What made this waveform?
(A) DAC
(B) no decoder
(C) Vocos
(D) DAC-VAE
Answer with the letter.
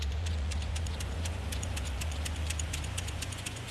C